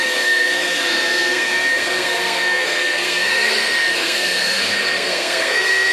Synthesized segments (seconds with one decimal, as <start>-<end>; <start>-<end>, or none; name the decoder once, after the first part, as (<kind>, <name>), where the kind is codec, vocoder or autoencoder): 0.0-5.9 (codec, SNAC)